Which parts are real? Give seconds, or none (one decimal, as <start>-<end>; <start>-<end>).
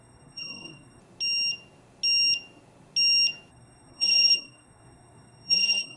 1.0-3.5